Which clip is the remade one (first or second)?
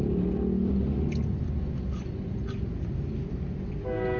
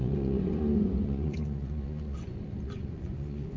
second